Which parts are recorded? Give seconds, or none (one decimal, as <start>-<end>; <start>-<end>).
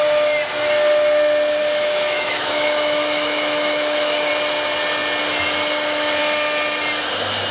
0.0-1.6; 4.3-7.5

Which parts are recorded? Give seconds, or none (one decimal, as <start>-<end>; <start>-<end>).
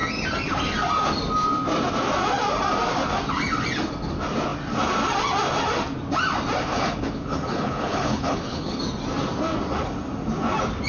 0.0-6.7; 8.8-10.9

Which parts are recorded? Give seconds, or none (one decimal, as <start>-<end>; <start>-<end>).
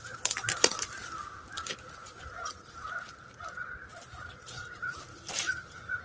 0.0-6.0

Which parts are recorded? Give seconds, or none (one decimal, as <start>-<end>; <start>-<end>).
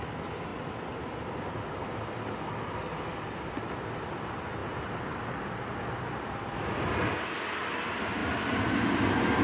0.0-8.2; 8.8-9.4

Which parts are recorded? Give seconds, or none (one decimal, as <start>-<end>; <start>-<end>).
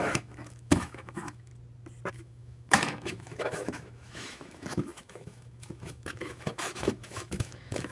1.5-2.1